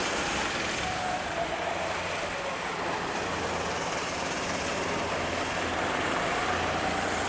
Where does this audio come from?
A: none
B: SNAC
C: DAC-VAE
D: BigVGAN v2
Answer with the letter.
D